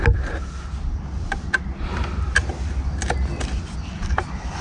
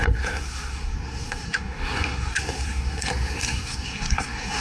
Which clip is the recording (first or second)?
first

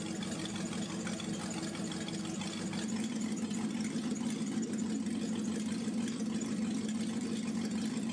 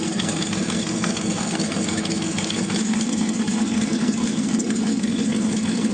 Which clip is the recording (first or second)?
first